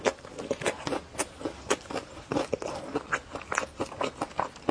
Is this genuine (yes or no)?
yes